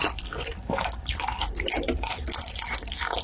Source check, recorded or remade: recorded